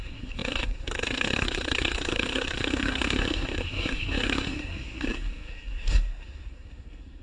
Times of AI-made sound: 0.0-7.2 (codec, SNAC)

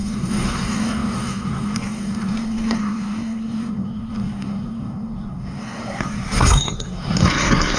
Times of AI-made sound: 0.0-7.8 (codec, SNAC)

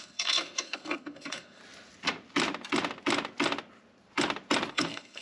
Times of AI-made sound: 0.0-1.6 (codec, SNAC); 4.7-5.2

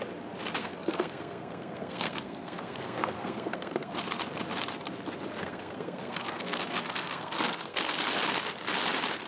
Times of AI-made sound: 0.6-3.9 (codec, SNAC); 5.4-8.0

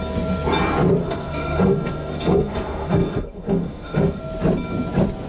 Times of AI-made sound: 1.0-4.2 (codec, SNAC)

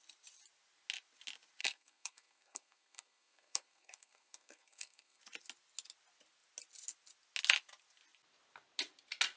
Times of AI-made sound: 1.6-5.2 (codec, SNAC)

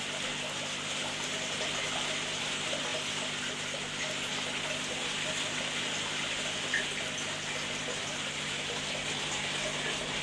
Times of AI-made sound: none